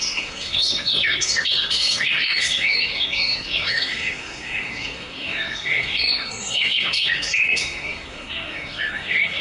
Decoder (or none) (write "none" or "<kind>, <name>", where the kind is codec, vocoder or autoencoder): codec, SNAC